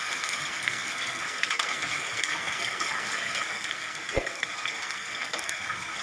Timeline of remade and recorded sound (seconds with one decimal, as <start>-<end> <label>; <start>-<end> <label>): 0.0-6.0 remade